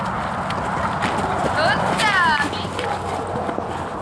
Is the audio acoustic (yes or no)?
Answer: yes